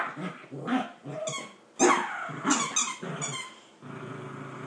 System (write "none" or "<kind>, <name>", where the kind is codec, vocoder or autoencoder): none